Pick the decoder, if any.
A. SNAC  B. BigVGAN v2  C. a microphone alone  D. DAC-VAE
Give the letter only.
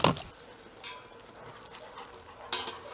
C